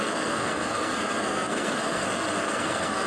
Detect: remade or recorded remade